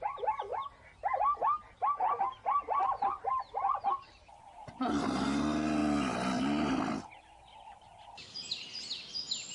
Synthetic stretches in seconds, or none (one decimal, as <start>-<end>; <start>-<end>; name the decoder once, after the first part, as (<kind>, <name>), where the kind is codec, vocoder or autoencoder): 2.8-3.3 (vocoder, BigVGAN v2)